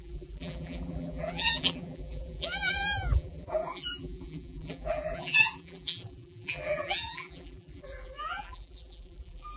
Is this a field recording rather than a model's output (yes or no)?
no